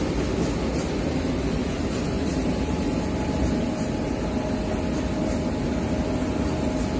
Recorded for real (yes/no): yes